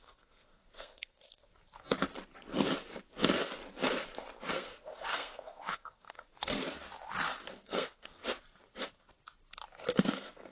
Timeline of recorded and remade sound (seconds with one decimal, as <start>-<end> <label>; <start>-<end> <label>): 0.0-1.5 remade; 1.5-4.5 recorded; 4.5-6.6 remade; 6.6-7.5 recorded; 7.5-8.2 remade; 8.2-9.9 recorded; 9.9-10.5 remade